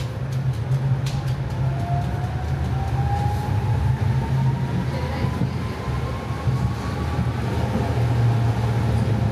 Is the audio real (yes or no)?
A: yes